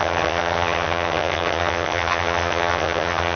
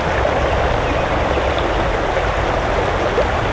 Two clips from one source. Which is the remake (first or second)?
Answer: first